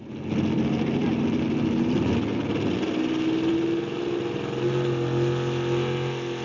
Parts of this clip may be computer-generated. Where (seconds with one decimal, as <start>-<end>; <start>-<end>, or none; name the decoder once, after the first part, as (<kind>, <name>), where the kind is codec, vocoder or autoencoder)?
none